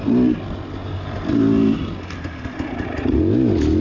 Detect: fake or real real